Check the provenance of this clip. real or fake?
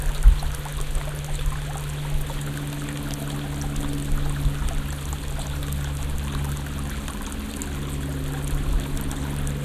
real